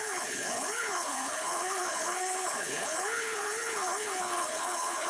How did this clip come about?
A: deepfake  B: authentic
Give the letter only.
A